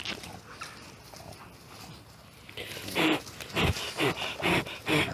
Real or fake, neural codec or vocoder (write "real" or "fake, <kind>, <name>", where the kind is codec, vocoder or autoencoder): real